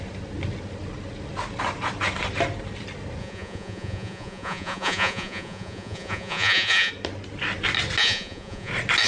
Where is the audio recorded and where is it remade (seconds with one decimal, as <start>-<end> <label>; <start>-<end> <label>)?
0.0-3.2 recorded; 3.2-6.9 remade; 6.9-8.0 recorded; 8.0-8.7 remade; 8.7-9.1 recorded